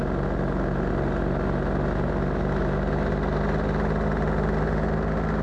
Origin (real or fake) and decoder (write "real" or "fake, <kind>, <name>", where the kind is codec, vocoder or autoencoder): real